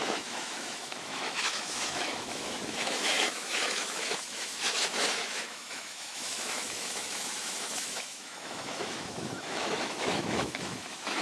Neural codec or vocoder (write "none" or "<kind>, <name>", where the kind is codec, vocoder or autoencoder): autoencoder, DAC-VAE